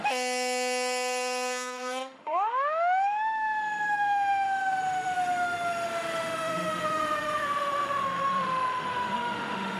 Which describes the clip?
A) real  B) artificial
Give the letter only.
B